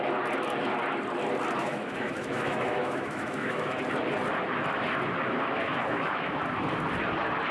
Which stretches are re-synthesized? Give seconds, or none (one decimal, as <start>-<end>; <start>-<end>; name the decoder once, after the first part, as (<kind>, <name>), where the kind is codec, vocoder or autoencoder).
1.6-3.8 (autoencoder, DAC-VAE); 5.6-6.4